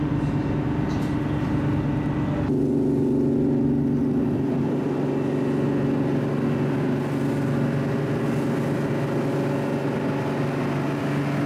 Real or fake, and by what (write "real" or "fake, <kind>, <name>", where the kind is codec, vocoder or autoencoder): real